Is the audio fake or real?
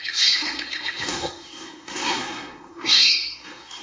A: fake